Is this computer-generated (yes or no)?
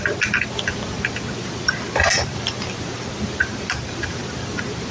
no